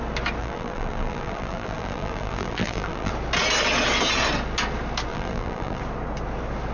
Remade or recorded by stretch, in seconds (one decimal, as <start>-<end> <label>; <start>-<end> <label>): 0.0-0.4 recorded; 0.4-3.1 remade; 3.1-5.1 recorded; 5.1-5.8 remade; 5.8-6.7 recorded